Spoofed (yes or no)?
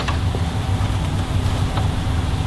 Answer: no